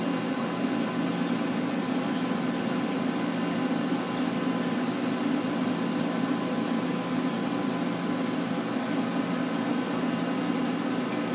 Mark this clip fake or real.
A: real